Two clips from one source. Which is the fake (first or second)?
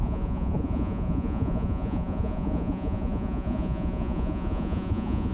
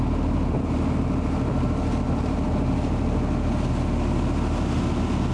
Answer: first